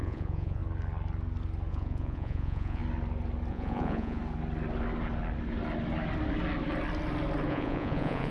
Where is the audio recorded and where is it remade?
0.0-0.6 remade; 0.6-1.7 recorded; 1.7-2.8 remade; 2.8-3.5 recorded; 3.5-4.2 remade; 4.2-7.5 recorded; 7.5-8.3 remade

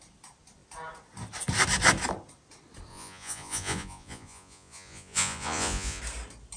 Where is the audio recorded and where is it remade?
0.0-2.9 recorded; 2.9-6.0 remade; 6.0-6.6 recorded

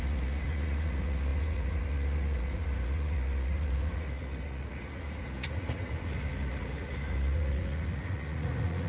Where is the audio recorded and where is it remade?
0.0-8.9 remade

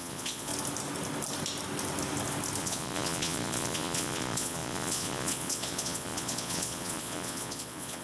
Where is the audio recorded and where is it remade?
0.0-0.5 remade; 0.5-2.6 recorded; 2.6-8.0 remade

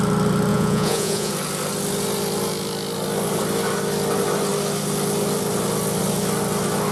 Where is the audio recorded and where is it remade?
0.0-0.5 recorded; 0.5-1.3 remade; 1.3-6.9 recorded

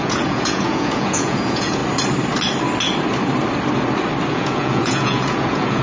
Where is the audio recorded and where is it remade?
0.0-1.8 remade; 1.8-4.3 recorded; 4.3-5.8 remade

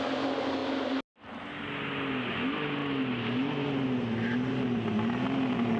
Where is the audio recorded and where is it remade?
0.0-5.8 recorded

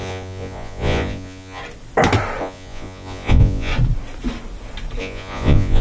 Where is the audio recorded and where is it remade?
0.0-1.6 remade; 1.6-2.4 recorded; 2.4-3.7 remade; 3.7-5.0 recorded; 5.0-5.8 remade